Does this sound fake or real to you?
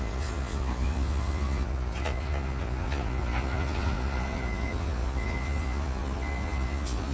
fake